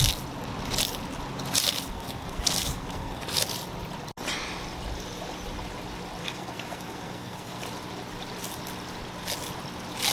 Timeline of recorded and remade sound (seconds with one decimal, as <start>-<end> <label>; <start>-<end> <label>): 0.0-1.9 recorded; 1.9-3.4 remade; 3.4-6.2 recorded; 6.2-7.6 remade; 7.6-10.1 recorded